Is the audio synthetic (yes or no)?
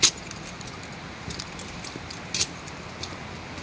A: no